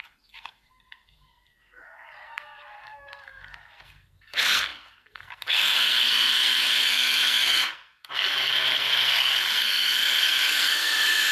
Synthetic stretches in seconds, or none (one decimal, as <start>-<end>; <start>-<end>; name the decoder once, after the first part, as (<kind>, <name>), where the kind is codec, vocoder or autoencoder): 0.0-11.3 (codec, SNAC)